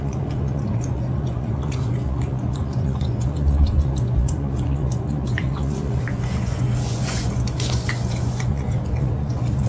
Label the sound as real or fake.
fake